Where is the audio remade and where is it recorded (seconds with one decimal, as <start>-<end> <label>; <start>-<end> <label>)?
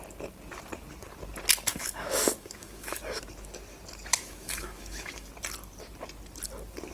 0.0-1.7 recorded; 1.7-3.2 remade; 3.2-4.1 recorded; 4.1-5.3 remade; 5.3-6.9 recorded